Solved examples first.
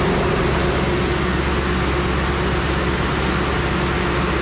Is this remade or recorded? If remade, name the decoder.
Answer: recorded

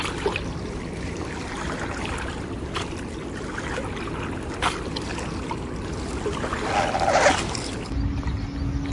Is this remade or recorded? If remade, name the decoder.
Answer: recorded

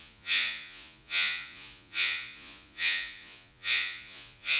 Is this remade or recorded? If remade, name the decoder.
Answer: remade, vocoder, Vocos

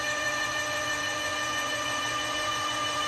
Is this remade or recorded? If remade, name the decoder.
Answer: remade, vocoder, Vocos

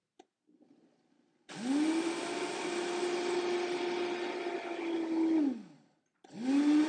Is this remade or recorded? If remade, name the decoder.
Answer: recorded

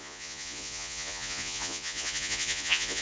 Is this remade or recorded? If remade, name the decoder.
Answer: remade, vocoder, Vocos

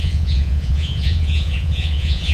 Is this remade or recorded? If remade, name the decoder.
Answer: remade, vocoder, Vocos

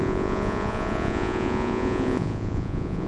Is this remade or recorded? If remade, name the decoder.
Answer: remade, vocoder, Vocos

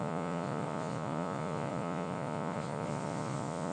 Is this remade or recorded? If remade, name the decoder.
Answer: remade, vocoder, Vocos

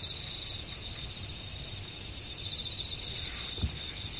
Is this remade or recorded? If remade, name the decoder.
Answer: recorded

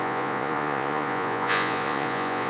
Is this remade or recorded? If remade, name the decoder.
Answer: remade, vocoder, Vocos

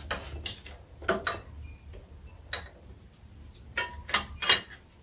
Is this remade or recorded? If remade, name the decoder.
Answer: recorded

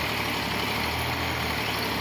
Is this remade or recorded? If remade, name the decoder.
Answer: recorded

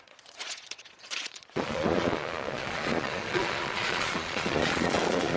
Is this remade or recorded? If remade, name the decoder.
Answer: remade, vocoder, Vocos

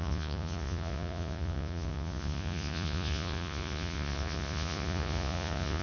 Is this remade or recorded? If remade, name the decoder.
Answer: remade, vocoder, Vocos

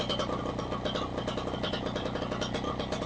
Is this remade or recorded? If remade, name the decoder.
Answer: recorded